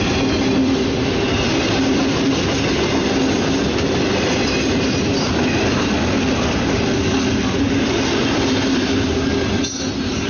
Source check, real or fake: real